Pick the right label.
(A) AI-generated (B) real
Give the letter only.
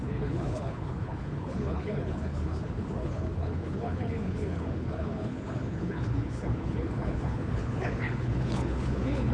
A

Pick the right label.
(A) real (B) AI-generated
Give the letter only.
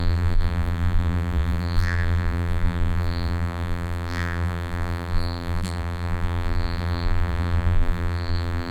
B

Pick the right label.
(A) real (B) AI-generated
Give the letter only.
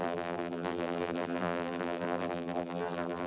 B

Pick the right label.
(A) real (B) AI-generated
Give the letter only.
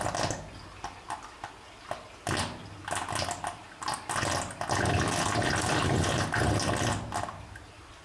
A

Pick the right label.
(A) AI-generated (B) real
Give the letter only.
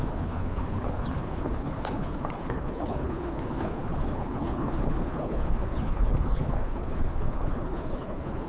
A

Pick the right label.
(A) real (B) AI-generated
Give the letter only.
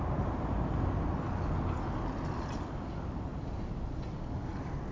A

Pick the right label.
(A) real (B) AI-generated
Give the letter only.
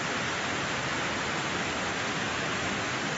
A